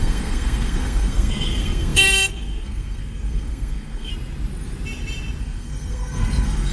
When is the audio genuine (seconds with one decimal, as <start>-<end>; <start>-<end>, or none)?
4.1-5.4